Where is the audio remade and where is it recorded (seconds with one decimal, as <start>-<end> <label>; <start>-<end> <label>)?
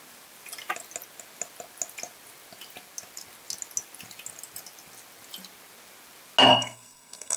0.0-6.5 recorded; 6.5-7.4 remade